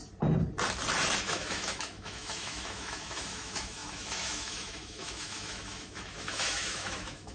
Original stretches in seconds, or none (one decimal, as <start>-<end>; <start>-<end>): 0.0-1.2